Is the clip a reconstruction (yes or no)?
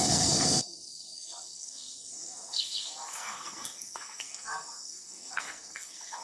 yes